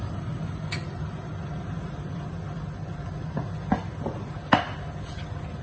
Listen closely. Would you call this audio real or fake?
real